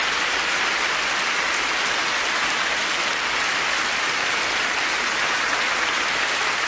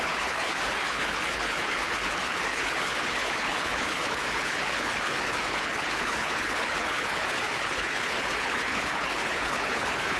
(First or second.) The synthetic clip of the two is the second